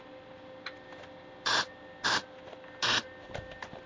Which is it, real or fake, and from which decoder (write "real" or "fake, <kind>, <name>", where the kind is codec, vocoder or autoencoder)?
real